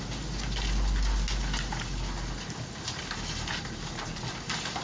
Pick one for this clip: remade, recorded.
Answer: recorded